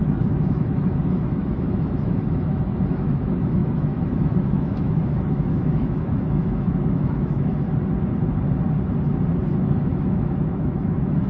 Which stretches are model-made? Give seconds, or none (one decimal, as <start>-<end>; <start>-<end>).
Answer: 0.0-7.5; 9.5-11.3